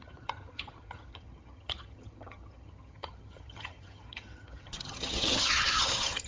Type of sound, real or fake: fake